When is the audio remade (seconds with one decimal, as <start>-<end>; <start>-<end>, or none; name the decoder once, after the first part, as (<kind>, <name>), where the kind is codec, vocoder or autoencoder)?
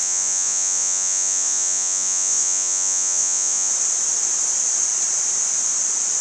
0.0-3.7 (vocoder, Vocos)